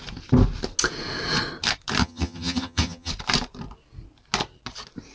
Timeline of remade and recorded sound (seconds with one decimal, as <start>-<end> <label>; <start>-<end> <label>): 0.0-2.0 recorded; 2.0-3.1 remade; 3.1-5.1 recorded